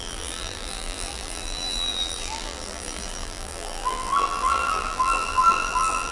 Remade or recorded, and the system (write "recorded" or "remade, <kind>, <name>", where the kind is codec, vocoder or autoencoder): remade, vocoder, BigVGAN v2